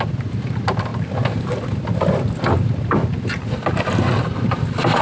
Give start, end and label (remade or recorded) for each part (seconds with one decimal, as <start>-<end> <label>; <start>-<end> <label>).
0.0-5.0 recorded